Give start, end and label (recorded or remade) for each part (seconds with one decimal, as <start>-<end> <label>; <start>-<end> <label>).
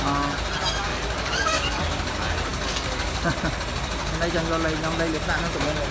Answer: 0.0-0.9 recorded; 0.9-1.8 remade; 1.8-2.5 recorded; 2.5-3.3 remade; 3.3-5.9 recorded